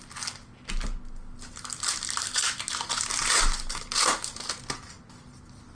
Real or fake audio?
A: real